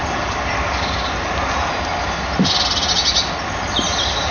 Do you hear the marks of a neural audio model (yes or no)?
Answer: no